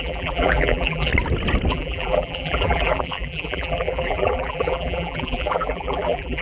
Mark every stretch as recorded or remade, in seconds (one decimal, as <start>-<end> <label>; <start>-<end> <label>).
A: 0.0-1.1 remade; 1.1-1.7 recorded; 1.7-6.4 remade